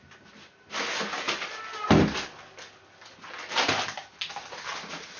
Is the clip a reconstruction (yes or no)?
no